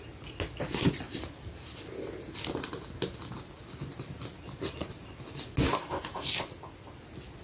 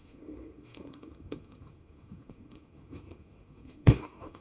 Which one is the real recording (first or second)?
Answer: first